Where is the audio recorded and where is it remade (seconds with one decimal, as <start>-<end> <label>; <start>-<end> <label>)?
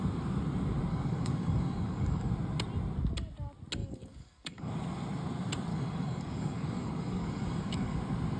0.0-0.9 recorded; 0.9-2.3 remade; 2.3-3.8 recorded; 3.8-4.7 remade; 4.7-5.7 recorded; 5.7-8.0 remade; 8.0-8.4 recorded